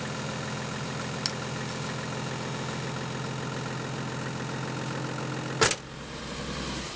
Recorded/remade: recorded